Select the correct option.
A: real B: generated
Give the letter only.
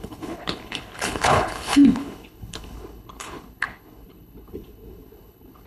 B